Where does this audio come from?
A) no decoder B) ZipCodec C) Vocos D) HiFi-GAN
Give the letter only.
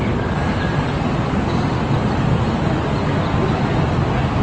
A